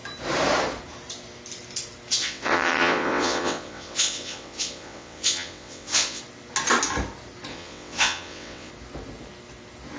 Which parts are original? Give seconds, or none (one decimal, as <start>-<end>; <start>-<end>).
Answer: 0.0-2.2; 6.2-7.5; 8.7-10.0